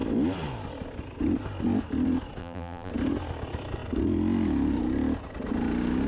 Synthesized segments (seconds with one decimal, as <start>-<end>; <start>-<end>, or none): 2.4-2.9